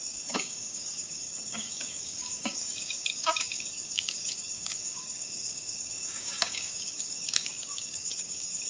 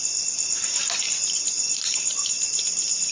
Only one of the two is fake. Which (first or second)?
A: first